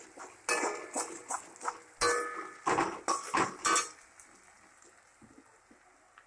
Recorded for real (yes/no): yes